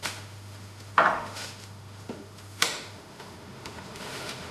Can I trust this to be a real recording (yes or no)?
no